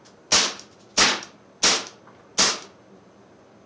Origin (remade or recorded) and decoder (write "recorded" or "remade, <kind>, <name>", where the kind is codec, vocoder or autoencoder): recorded